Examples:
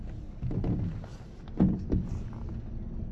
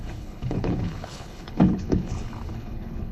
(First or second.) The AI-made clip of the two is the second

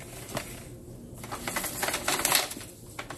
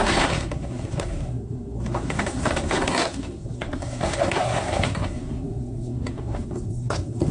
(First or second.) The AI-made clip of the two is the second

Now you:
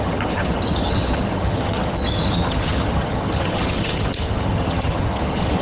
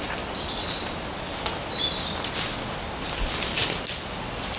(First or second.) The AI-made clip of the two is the first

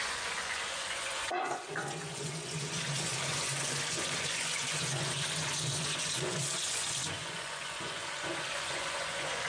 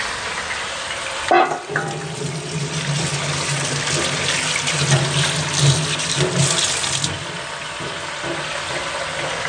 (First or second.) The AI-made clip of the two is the first